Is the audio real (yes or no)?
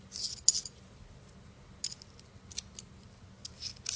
yes